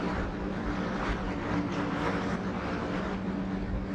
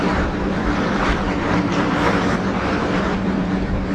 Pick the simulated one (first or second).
second